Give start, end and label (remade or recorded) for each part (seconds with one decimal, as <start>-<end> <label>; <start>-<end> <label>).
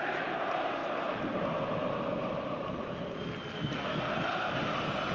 0.0-3.5 recorded; 3.5-4.0 remade; 4.0-5.1 recorded